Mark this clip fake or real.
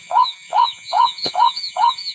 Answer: fake